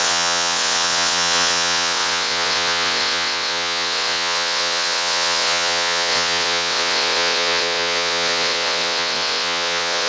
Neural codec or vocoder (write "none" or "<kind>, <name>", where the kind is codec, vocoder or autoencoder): vocoder, WaveNeXt